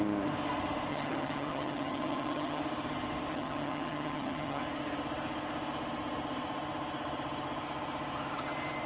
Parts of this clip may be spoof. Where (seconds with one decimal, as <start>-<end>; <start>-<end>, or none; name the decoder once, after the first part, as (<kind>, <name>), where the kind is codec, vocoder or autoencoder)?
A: 0.9-2.6 (vocoder, HiFi-GAN); 3.3-4.6